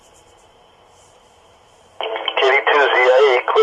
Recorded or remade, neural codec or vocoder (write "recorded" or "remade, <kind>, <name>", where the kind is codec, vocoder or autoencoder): remade, vocoder, BigVGAN v2